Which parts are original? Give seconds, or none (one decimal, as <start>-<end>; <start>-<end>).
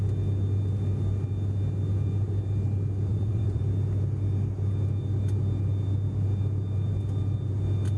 0.0-3.1; 3.6-8.0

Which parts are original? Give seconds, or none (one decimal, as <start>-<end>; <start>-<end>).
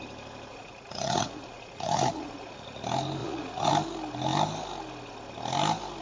0.0-0.5; 2.8-3.2; 3.7-6.0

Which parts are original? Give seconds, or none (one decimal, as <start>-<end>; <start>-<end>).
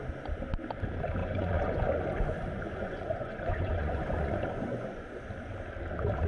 0.0-1.2; 5.0-6.3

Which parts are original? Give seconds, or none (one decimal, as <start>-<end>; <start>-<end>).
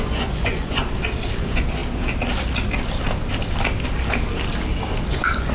0.8-1.4; 1.8-5.1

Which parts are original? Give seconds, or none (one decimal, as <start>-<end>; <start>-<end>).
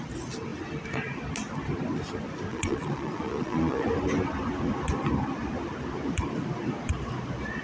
0.0-2.5; 3.9-7.6